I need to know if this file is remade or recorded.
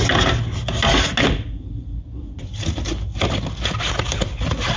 recorded